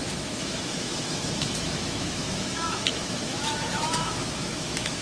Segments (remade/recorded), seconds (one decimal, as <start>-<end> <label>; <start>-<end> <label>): 0.0-5.0 remade